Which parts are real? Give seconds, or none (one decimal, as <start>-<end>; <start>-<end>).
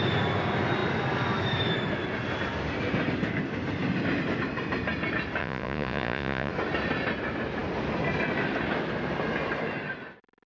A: 0.0-5.4; 6.5-10.5